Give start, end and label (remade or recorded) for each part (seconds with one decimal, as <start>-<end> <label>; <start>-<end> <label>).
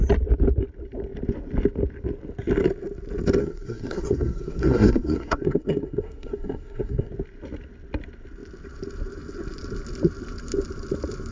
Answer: 0.0-3.4 recorded; 3.4-7.1 remade; 7.1-11.3 recorded